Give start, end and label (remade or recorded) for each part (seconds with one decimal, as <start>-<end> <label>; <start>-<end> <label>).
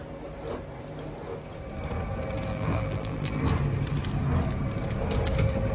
0.0-2.5 recorded; 2.5-3.4 remade; 3.4-5.7 recorded